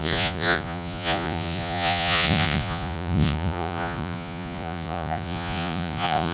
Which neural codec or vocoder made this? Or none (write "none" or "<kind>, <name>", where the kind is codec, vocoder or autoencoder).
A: vocoder, Vocos